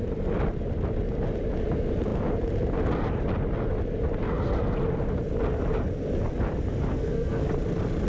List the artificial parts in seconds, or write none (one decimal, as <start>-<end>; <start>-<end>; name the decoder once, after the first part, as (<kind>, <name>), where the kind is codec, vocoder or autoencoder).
6.9-7.5 (codec, SNAC)